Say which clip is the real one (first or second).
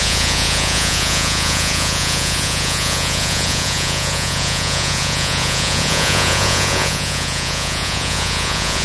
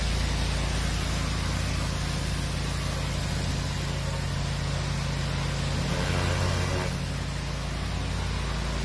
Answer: second